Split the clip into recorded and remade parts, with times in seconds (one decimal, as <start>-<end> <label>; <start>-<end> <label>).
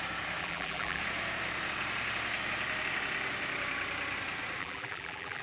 0.0-0.4 recorded; 0.4-1.0 remade; 1.0-4.6 recorded; 4.6-5.4 remade